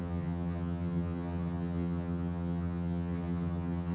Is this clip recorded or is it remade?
remade